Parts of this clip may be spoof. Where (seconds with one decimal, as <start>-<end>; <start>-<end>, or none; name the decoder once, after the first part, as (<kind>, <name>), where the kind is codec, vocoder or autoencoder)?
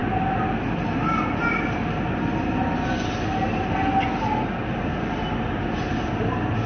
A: none